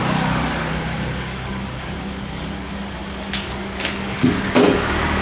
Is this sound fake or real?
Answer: fake